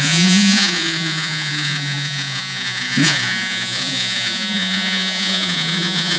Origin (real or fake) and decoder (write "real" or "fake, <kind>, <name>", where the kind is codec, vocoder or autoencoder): fake, vocoder, Vocos